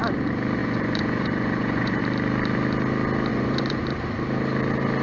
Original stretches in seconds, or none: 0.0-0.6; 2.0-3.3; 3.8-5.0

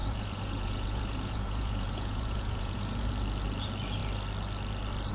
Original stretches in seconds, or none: 3.1-5.1

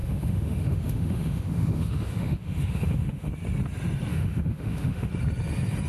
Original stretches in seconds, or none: 3.3-4.1; 5.1-5.9

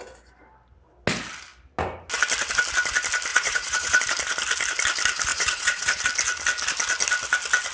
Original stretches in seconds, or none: 0.0-3.3; 4.0-5.3; 6.0-7.7

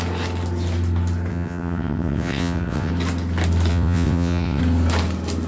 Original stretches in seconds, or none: 0.0-1.3; 2.9-3.7; 4.6-5.5